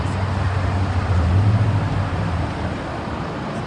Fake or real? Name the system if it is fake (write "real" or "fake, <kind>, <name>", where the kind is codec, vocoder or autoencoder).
real